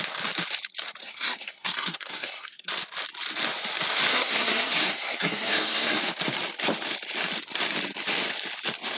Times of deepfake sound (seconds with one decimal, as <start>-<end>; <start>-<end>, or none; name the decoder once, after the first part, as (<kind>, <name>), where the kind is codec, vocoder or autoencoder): 1.0-2.7 (codec, SNAC); 4.1-6.0